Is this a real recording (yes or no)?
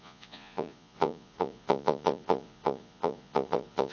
no